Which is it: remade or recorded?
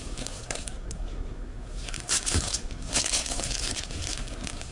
remade